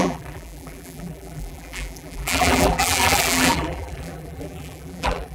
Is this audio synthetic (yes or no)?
yes